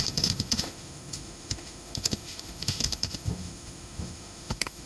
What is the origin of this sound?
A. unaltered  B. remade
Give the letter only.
B